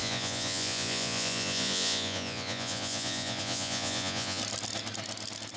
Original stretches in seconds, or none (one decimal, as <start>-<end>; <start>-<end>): 4.4-5.6